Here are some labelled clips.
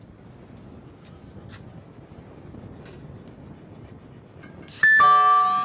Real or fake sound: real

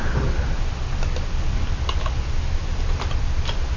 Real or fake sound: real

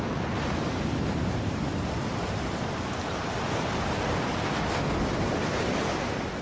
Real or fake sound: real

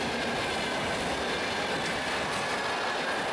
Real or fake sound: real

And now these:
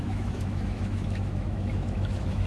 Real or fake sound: fake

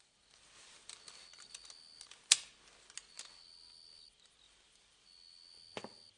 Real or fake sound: real